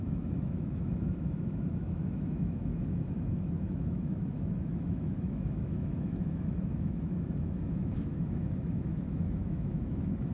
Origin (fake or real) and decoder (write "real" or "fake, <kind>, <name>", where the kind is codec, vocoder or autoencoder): fake, autoencoder, DAC-VAE